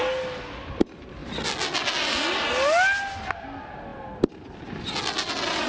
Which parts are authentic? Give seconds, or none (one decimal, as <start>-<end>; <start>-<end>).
0.0-5.7